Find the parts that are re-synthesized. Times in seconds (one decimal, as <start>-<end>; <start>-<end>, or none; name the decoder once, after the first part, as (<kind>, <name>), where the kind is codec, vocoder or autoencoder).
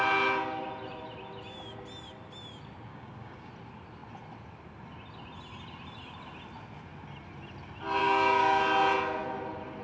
2.9-3.5 (codec, DAC); 8.0-8.6